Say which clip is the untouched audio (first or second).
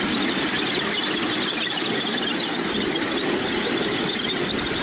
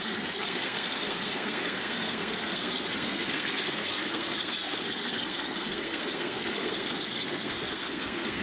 first